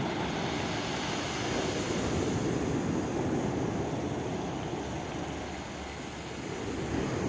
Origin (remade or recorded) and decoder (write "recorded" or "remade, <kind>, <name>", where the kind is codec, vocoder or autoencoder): recorded